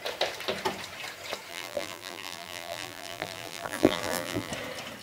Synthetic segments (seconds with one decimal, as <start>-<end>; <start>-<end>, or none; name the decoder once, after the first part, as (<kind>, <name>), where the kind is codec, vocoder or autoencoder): 1.5-4.5 (vocoder, BigVGAN v2)